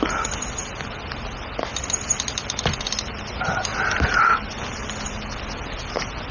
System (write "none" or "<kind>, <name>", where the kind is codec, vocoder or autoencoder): none